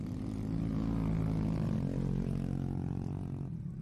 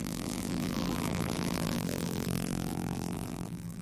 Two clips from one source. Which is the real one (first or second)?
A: first